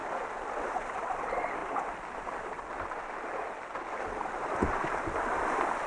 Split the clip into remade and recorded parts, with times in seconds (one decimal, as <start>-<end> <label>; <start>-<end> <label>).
0.0-5.9 recorded